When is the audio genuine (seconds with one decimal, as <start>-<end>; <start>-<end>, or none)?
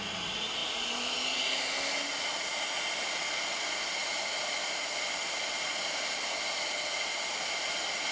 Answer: 0.0-8.1